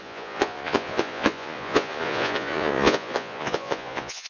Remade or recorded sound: remade